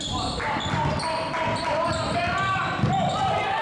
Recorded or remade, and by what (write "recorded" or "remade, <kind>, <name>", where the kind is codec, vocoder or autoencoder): recorded